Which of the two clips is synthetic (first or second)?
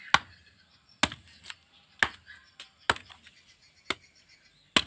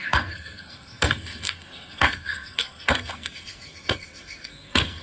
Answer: second